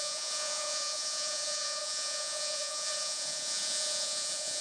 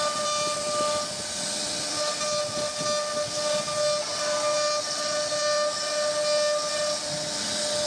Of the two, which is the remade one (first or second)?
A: first